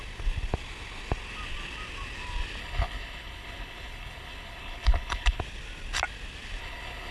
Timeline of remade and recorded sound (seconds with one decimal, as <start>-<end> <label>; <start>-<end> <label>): 0.0-2.6 recorded; 2.6-5.4 remade; 5.4-6.6 recorded; 6.6-7.1 remade